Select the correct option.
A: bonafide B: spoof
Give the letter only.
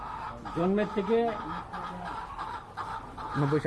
A